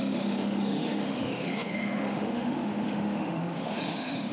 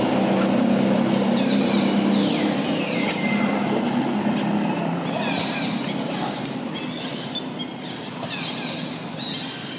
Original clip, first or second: second